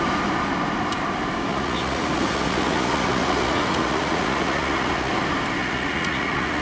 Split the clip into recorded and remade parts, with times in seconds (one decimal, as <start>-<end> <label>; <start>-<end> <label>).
0.0-1.5 recorded; 1.5-5.1 remade; 5.1-5.6 recorded; 5.6-6.6 remade